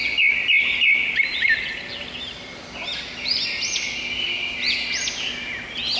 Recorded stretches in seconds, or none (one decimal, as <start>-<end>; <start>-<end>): 0.0-6.0